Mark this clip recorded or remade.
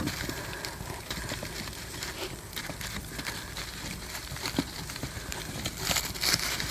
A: remade